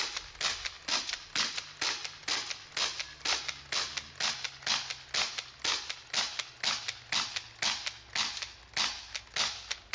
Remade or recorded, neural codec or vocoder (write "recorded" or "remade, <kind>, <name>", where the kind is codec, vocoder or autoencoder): recorded